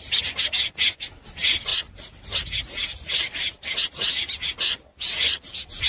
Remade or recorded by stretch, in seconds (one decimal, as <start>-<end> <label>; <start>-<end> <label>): 0.0-5.9 recorded